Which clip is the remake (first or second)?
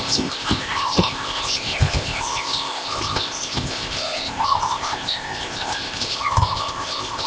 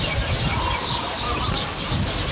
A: first